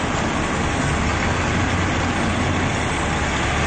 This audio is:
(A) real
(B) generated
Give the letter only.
A